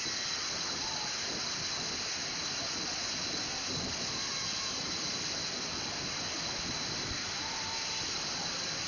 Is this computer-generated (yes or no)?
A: no